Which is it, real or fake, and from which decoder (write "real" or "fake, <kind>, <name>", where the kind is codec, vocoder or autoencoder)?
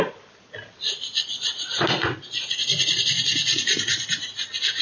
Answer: real